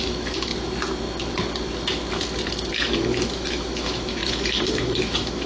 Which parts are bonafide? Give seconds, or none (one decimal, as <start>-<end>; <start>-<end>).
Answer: 0.5-2.7